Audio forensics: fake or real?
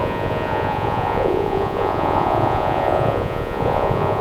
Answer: fake